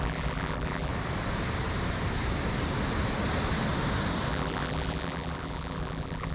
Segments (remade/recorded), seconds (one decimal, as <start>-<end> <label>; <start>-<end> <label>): 0.0-0.9 remade; 0.9-4.3 recorded; 4.3-6.3 remade